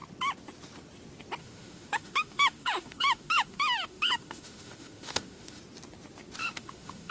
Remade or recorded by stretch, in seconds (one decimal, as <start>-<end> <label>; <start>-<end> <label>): 0.0-1.4 recorded; 1.4-5.6 remade; 5.6-6.4 recorded; 6.4-7.1 remade